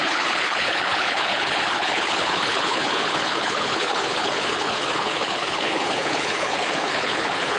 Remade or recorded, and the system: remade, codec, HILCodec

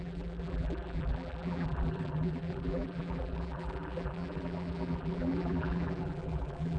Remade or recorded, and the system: remade, vocoder, BigVGAN v2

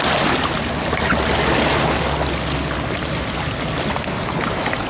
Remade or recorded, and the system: recorded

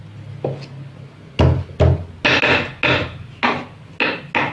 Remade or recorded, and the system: recorded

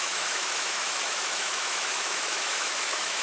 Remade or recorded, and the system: remade, autoencoder, DAC-VAE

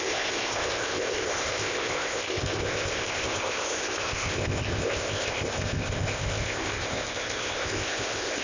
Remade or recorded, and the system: remade, codec, ZipCodec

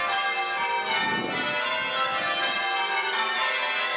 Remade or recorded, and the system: recorded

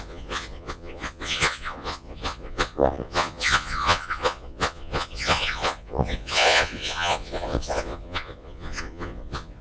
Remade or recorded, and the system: remade, vocoder, Vocos